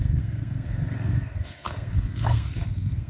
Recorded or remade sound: remade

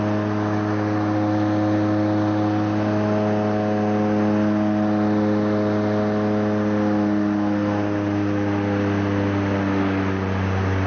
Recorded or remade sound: recorded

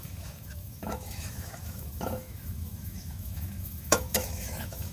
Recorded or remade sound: remade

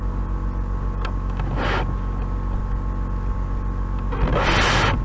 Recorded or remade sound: recorded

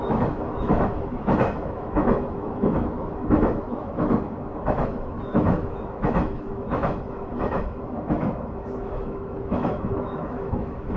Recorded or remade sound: remade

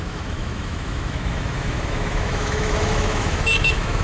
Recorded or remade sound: remade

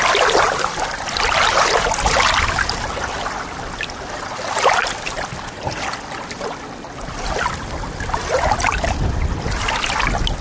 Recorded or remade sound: recorded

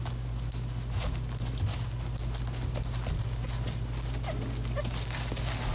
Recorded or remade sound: recorded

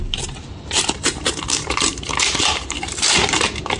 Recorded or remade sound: remade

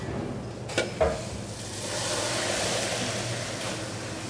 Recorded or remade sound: recorded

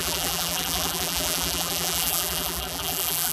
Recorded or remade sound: remade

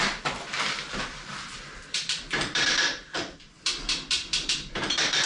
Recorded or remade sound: remade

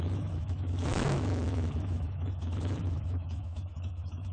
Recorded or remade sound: remade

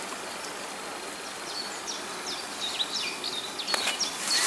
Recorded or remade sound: recorded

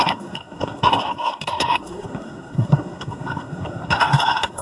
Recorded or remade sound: remade